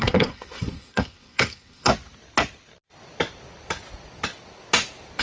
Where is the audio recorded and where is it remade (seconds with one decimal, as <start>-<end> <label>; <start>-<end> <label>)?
0.0-1.9 remade; 1.9-5.2 recorded

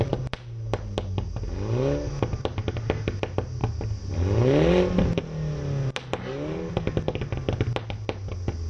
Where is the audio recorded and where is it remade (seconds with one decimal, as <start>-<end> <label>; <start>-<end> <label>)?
0.0-8.7 recorded

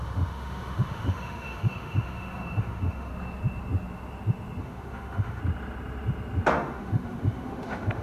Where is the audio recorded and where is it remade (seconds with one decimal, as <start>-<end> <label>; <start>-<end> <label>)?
0.0-3.1 remade; 3.1-4.6 recorded; 4.6-5.4 remade; 5.4-6.5 recorded; 6.5-8.0 remade